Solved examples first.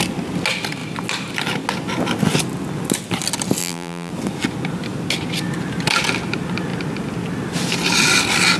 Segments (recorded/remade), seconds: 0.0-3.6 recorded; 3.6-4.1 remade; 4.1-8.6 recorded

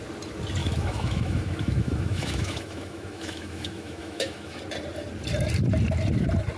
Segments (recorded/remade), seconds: 0.0-0.6 recorded; 0.6-4.6 remade; 4.6-6.6 recorded

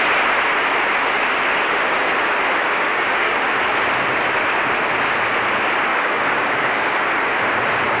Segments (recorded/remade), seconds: 0.0-2.6 recorded; 2.6-3.4 remade; 3.4-5.9 recorded; 5.9-6.9 remade; 6.9-8.0 recorded

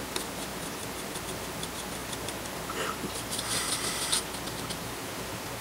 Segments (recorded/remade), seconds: 0.0-5.6 recorded

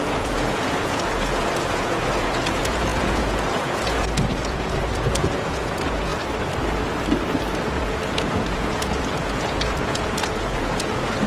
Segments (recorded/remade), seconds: 0.0-6.1 remade; 6.1-7.7 recorded; 7.7-11.3 remade

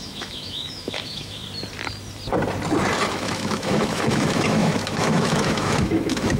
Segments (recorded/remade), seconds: 0.0-1.4 remade; 1.4-3.1 recorded; 3.1-6.4 remade